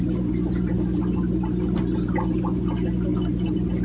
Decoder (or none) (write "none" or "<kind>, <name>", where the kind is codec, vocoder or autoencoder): none